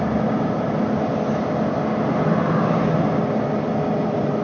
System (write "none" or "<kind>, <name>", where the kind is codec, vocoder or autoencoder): none